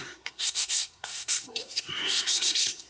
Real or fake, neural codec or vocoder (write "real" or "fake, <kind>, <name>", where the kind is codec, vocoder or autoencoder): fake, codec, SNAC